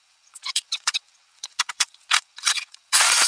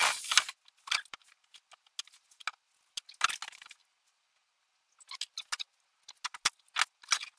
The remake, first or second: first